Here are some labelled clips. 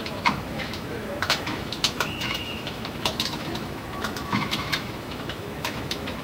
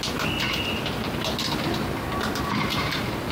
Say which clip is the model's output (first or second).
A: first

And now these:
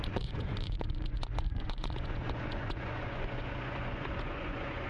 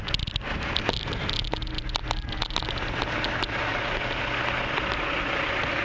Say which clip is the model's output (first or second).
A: first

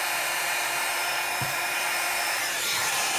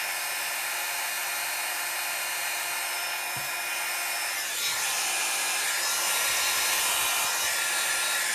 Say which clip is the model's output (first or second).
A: first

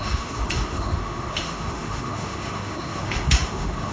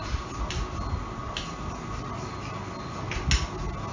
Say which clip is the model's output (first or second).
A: first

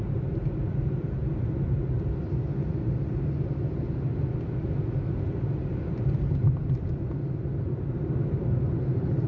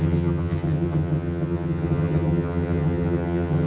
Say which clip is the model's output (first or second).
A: second